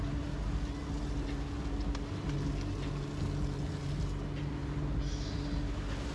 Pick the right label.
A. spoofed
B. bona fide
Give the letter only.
B